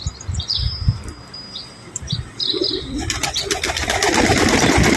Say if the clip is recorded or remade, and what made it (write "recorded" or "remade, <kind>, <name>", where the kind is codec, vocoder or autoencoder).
remade, vocoder, BigVGAN v2